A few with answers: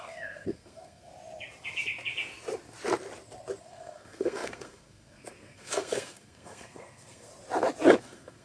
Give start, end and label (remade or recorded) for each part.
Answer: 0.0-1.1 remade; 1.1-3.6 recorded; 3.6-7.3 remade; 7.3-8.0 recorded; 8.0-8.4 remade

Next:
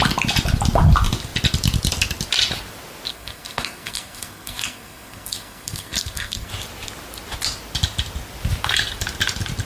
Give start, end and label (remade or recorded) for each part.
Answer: 0.0-3.1 recorded; 3.1-6.5 remade; 6.5-9.6 recorded